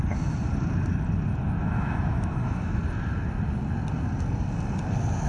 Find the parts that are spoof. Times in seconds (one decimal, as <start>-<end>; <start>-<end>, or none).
1.6-2.8